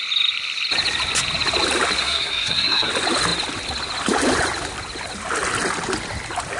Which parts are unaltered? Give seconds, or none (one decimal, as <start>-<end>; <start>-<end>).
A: 0.0-2.0; 2.9-6.6